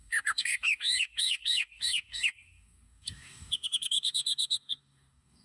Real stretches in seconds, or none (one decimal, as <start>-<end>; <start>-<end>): none